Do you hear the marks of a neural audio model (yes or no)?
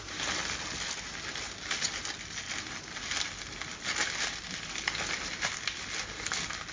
no